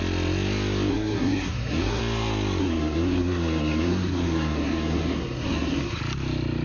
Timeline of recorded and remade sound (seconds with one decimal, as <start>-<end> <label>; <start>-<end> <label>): 0.0-0.9 recorded; 0.9-2.0 remade; 2.0-2.6 recorded; 2.6-6.0 remade; 6.0-6.6 recorded